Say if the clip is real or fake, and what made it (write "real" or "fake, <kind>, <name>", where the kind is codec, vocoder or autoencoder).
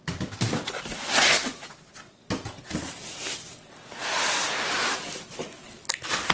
real